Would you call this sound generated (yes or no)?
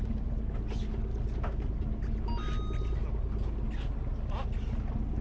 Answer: no